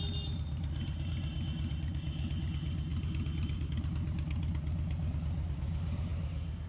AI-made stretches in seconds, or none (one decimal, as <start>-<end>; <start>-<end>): none